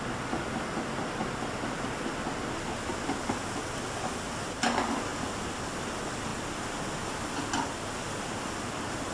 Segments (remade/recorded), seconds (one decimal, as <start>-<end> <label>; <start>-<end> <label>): 0.0-5.1 remade; 5.1-5.6 recorded; 5.6-9.1 remade